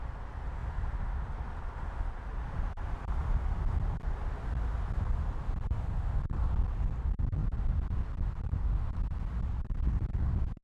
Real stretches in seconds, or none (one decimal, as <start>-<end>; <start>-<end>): 0.0-10.6